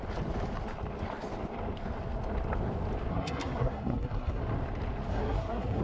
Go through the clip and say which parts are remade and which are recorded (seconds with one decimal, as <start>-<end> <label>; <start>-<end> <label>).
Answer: 0.0-3.1 recorded; 3.1-4.4 remade; 4.4-5.1 recorded; 5.1-5.8 remade